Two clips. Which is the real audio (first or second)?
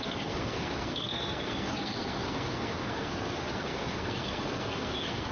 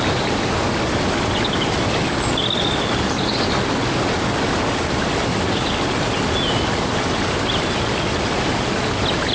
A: second